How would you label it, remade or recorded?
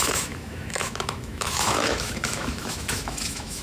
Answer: remade